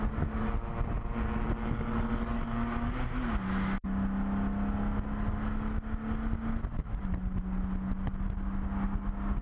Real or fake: real